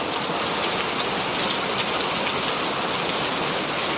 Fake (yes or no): no